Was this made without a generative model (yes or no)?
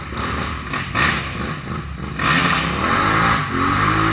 yes